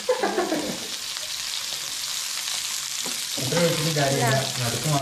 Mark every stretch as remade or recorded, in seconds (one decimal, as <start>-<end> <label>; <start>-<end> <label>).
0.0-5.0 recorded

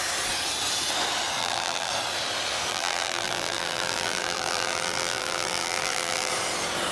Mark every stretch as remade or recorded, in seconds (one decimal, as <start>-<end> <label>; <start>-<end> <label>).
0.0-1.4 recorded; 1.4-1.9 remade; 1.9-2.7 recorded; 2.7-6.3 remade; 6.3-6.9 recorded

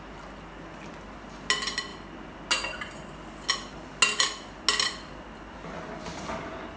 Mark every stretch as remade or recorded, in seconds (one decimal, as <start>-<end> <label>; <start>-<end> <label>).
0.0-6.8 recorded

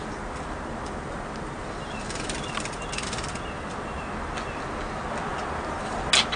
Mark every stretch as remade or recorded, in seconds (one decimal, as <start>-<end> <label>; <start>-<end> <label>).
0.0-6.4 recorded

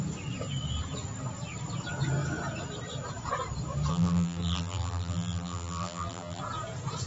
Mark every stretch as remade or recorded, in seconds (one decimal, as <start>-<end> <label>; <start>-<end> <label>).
0.0-3.9 recorded; 3.9-6.4 remade; 6.4-7.1 recorded

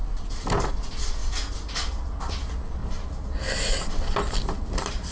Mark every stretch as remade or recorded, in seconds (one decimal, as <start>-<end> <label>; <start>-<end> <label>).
0.0-2.8 recorded; 2.8-5.1 remade